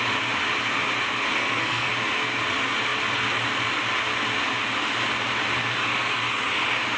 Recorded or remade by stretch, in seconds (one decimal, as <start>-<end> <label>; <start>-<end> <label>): 0.0-1.3 recorded; 1.3-1.9 remade; 1.9-7.0 recorded